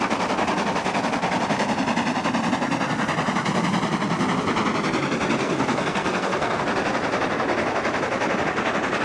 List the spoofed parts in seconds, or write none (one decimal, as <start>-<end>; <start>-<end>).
5.4-6.6